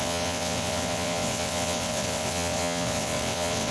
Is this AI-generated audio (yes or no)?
yes